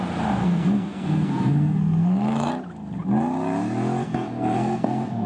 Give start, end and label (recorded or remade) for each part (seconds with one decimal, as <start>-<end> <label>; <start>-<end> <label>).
0.0-0.4 recorded; 0.4-2.5 remade; 2.5-4.0 recorded; 4.0-5.3 remade